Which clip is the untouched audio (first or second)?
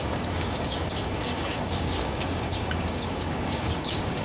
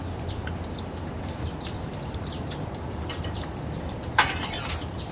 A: second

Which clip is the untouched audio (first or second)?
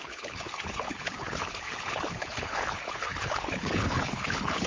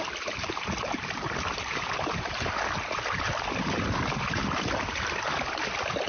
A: second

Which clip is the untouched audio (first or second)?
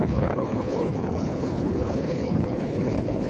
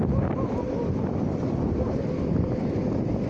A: second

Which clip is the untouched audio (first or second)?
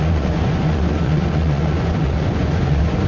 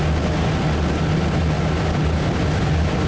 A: second